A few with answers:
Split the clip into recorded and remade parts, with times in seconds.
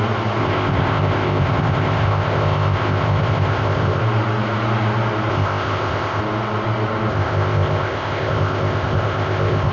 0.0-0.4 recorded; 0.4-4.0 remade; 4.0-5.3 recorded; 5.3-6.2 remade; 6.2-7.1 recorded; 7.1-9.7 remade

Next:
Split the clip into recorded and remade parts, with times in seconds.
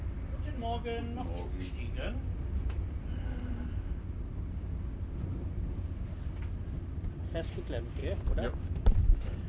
0.0-9.5 recorded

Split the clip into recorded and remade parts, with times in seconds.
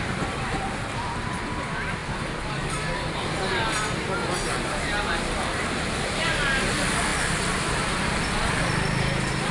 0.0-9.5 remade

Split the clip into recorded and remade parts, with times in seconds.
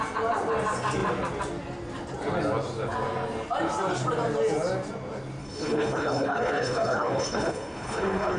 0.0-5.4 recorded; 5.4-8.4 remade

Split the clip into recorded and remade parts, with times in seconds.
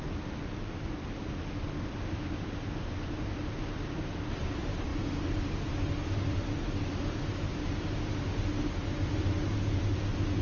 0.0-10.4 recorded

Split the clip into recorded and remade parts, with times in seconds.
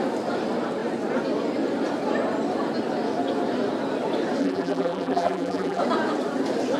0.0-4.4 recorded; 4.4-5.8 remade; 5.8-6.8 recorded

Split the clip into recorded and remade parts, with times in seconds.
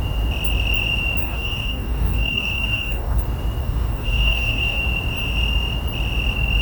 0.0-1.2 recorded; 1.2-3.2 remade; 3.2-3.6 recorded; 3.6-4.8 remade; 4.8-6.6 recorded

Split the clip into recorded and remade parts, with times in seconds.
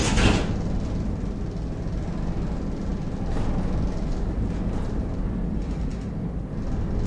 0.0-7.1 recorded